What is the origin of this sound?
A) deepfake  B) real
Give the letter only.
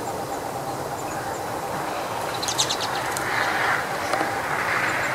A